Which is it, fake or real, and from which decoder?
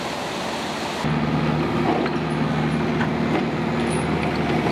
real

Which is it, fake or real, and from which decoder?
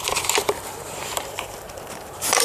fake, vocoder, BigVGAN v2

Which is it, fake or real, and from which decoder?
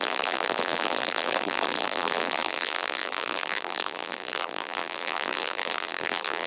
fake, vocoder, BigVGAN v2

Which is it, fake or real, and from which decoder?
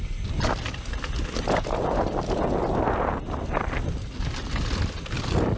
real